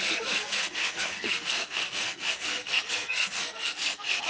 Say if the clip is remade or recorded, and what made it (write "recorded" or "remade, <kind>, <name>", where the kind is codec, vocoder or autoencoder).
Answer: remade, codec, SNAC